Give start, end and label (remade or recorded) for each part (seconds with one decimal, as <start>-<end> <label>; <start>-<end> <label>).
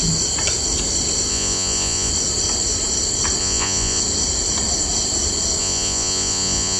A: 0.0-1.3 recorded; 1.3-2.1 remade; 2.1-3.4 recorded; 3.4-4.0 remade; 4.0-5.6 recorded; 5.6-6.8 remade